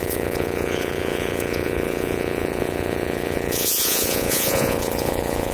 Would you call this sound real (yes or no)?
no